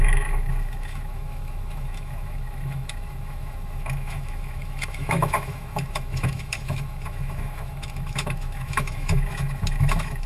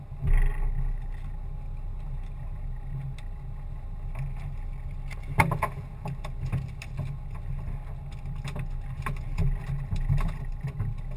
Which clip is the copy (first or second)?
first